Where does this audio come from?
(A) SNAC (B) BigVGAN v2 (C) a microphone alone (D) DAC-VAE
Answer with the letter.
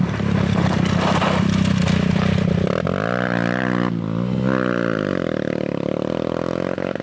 B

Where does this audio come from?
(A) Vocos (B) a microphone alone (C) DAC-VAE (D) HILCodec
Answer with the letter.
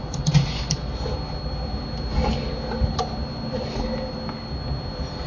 B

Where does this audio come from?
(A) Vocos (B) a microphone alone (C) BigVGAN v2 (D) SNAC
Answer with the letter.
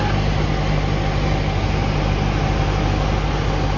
B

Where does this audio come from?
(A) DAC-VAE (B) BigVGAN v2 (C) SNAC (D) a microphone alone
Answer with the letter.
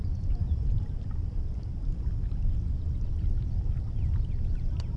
B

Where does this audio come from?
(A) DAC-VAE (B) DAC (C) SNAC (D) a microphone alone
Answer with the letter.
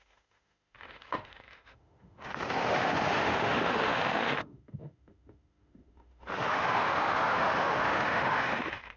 A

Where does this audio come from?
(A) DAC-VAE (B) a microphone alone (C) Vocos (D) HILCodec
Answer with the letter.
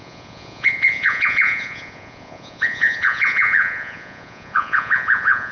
C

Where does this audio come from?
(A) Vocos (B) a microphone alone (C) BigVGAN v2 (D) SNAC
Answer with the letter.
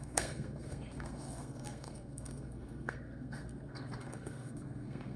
D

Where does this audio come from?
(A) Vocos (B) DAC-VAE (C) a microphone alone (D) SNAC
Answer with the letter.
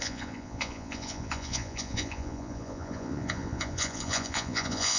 A